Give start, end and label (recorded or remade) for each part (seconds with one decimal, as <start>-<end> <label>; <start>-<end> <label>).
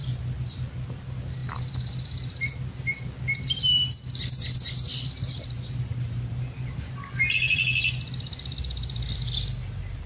0.0-5.3 recorded; 5.3-6.3 remade; 6.3-10.1 recorded